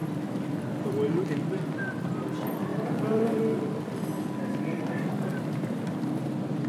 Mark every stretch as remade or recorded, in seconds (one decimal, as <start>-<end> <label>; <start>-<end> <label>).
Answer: 0.0-0.6 remade; 0.6-2.7 recorded; 2.7-3.4 remade; 3.4-5.3 recorded; 5.3-5.9 remade; 5.9-6.7 recorded